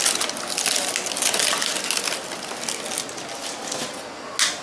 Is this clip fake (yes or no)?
no